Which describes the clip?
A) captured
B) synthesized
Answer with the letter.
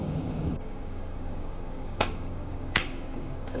B